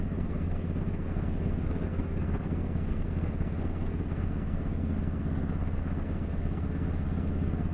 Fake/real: fake